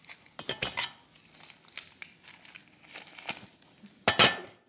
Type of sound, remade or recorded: recorded